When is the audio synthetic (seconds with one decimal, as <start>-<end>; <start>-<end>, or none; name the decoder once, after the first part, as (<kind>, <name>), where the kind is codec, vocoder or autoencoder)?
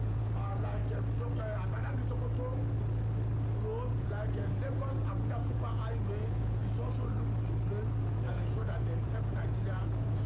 0.0-0.8 (vocoder, Vocos); 3.9-6.6; 8.0-10.3